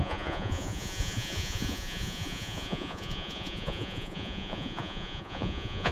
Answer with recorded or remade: remade